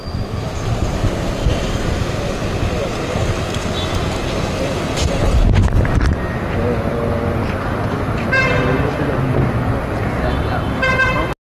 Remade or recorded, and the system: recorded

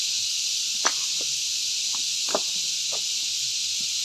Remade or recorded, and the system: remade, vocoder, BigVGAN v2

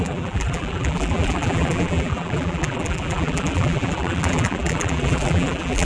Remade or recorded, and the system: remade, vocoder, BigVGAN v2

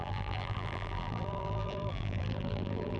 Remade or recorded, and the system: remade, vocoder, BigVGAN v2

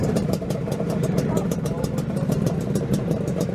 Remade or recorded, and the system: remade, vocoder, BigVGAN v2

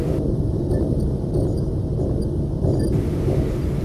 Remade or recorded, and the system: remade, vocoder, BigVGAN v2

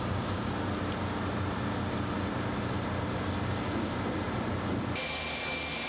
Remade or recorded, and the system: recorded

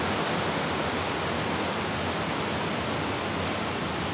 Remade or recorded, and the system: recorded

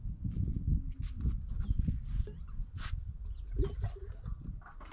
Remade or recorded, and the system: recorded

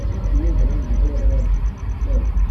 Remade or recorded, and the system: recorded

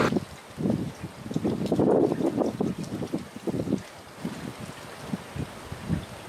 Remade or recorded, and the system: recorded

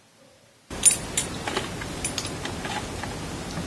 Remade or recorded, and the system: recorded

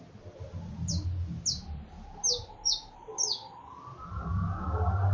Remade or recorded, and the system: recorded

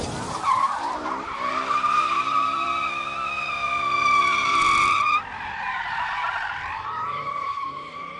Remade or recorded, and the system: remade, vocoder, BigVGAN v2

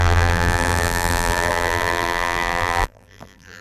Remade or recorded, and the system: remade, vocoder, BigVGAN v2